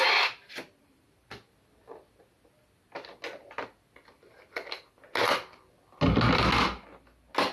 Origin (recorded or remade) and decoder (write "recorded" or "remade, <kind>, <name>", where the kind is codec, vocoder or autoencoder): recorded